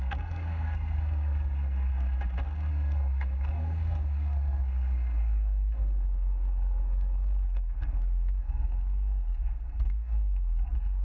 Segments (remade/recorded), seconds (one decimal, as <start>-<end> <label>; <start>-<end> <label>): 0.0-1.9 remade; 1.9-2.7 recorded; 2.7-11.0 remade